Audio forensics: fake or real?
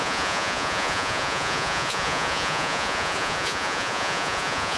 fake